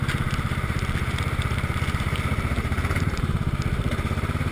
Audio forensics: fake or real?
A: fake